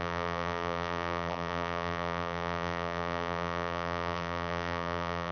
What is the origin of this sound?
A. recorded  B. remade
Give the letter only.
B